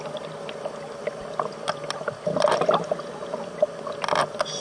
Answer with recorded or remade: recorded